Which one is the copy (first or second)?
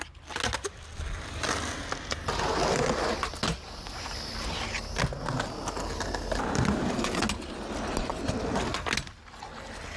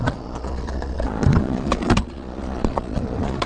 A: second